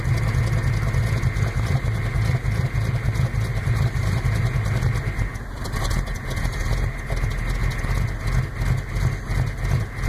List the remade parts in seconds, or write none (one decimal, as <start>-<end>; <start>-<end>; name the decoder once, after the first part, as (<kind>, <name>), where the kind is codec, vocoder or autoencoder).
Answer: 3.5-4.2 (vocoder, BigVGAN v2)